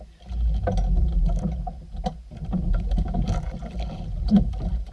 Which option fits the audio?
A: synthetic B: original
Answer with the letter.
B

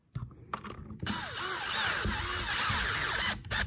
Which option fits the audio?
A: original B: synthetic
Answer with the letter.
A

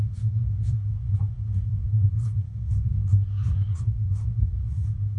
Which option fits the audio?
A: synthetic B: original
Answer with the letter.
A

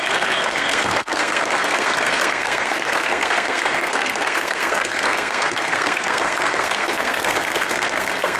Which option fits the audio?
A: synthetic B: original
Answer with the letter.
A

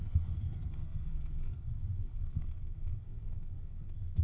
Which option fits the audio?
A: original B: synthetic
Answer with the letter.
B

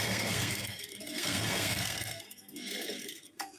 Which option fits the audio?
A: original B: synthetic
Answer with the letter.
B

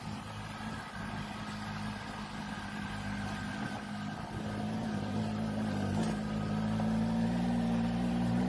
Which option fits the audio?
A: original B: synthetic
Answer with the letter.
A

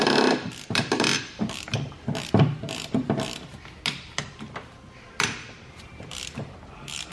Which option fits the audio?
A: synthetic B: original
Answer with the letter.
B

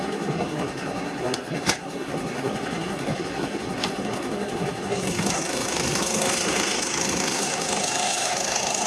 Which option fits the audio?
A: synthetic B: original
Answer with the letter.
A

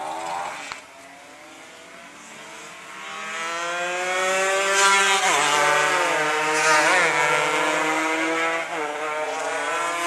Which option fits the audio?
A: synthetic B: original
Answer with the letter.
B